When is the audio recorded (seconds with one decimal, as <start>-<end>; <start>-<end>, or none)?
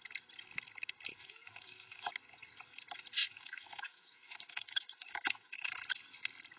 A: 0.0-1.1; 2.0-3.2; 5.7-6.6